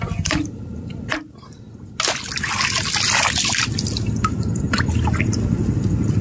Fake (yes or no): no